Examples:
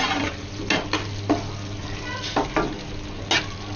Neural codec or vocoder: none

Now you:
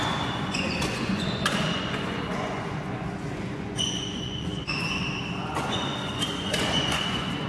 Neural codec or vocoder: vocoder, Vocos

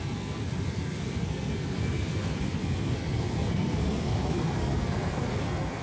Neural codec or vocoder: codec, SNAC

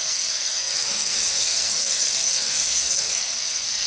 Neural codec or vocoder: codec, SNAC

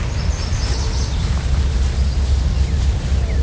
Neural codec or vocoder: none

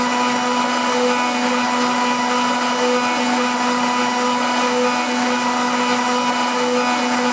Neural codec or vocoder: none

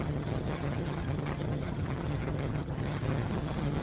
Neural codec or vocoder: vocoder, HiFi-GAN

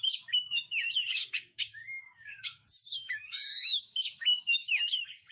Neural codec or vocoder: codec, DAC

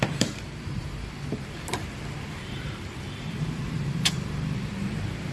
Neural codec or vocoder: vocoder, BigVGAN v2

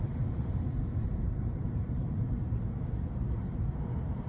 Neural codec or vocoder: vocoder, BigVGAN v2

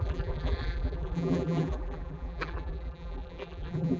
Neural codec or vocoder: vocoder, BigVGAN v2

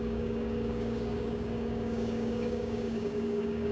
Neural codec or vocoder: codec, DAC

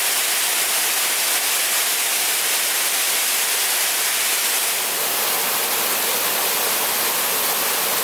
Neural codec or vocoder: none